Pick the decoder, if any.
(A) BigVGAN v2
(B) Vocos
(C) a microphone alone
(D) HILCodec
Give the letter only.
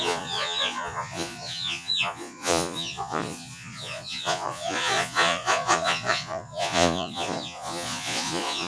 B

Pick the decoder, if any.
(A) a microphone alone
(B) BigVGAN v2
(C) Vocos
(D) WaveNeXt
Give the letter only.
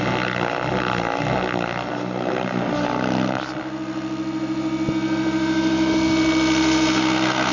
A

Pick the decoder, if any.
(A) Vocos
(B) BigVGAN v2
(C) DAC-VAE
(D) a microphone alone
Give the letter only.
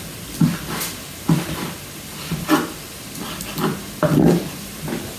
D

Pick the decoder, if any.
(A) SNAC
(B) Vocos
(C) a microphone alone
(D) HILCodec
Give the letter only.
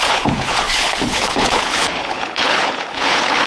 D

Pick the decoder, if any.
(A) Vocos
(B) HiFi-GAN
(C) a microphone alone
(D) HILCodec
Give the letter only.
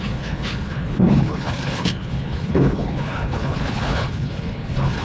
D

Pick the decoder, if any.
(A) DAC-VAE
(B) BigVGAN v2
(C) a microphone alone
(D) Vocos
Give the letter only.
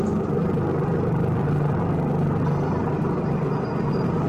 C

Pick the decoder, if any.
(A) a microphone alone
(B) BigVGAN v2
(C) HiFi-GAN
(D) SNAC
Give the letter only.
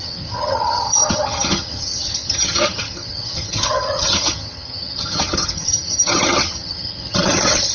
C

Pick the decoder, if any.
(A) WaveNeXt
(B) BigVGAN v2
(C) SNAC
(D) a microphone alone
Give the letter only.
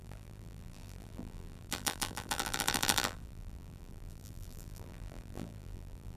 B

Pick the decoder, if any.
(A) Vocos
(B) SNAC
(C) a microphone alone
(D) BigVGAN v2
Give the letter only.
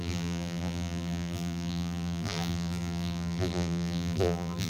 D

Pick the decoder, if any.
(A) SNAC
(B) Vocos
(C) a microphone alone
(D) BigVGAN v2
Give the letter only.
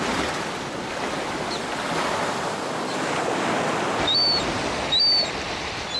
C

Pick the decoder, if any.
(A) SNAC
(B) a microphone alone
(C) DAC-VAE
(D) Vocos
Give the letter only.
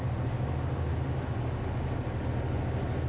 B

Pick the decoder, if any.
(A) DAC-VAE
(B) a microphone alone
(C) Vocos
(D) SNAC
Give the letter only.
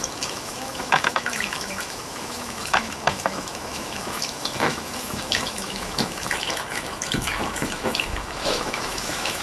A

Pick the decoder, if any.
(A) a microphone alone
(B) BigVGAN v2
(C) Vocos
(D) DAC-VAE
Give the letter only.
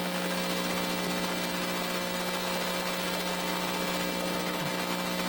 A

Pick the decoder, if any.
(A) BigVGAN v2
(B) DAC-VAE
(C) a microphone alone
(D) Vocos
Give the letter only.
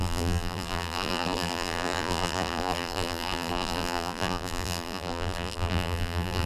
A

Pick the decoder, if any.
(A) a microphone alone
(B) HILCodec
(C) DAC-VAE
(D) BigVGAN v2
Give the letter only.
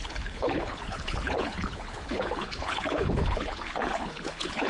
B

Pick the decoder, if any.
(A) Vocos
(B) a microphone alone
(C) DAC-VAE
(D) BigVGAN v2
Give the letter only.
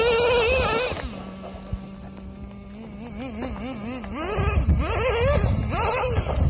B